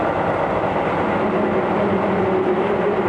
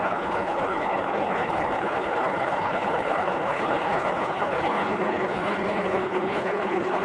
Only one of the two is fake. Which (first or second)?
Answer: second